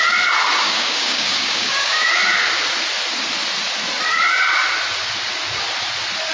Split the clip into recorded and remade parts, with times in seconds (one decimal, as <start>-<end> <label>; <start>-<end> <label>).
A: 0.0-0.6 recorded; 0.6-2.1 remade; 2.1-6.3 recorded